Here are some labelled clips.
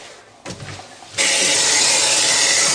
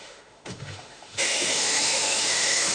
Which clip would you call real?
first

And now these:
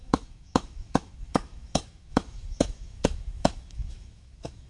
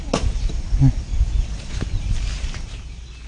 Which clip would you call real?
second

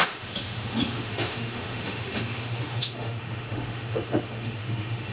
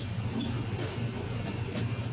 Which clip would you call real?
second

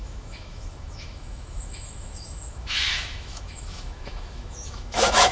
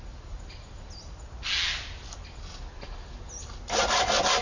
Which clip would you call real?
second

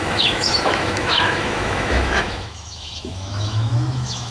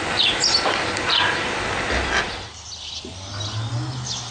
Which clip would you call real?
second